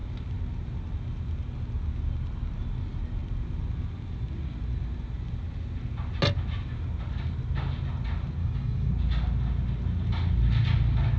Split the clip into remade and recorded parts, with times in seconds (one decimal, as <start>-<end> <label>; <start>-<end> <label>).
0.0-8.4 recorded; 8.4-8.9 remade; 8.9-11.2 recorded